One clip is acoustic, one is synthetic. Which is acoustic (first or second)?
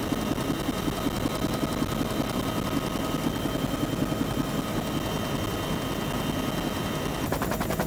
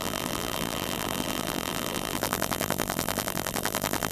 first